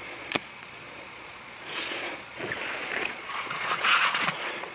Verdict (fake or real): fake